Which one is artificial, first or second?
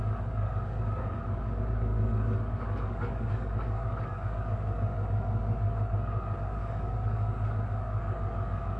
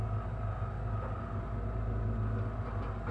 first